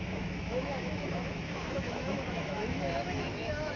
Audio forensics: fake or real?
fake